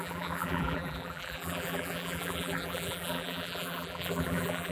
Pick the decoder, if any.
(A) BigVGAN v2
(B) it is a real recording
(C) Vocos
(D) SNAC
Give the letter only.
A